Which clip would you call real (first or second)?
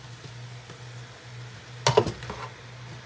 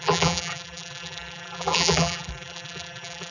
first